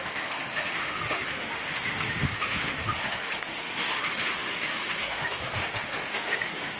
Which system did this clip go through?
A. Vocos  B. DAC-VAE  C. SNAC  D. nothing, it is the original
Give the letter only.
B